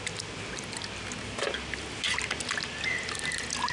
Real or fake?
real